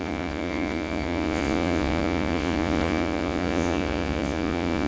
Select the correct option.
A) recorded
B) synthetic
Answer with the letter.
B